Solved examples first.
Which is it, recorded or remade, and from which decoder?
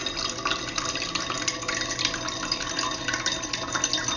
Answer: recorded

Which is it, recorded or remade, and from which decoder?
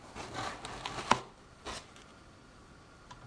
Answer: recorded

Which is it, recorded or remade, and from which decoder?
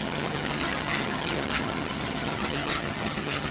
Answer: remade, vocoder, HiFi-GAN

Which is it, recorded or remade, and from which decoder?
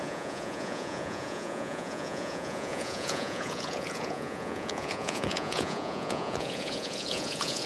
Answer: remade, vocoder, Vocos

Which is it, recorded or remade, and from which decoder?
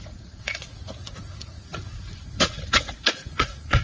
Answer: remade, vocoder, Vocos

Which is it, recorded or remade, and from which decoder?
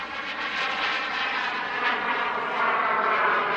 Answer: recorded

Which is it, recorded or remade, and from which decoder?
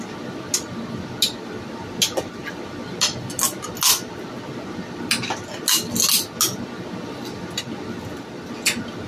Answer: recorded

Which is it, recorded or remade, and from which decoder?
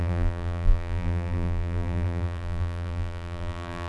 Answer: remade, vocoder, BigVGAN v2